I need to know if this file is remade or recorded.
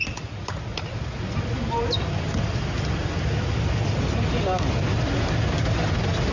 recorded